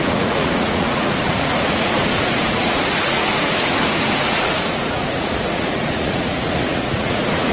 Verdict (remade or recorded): remade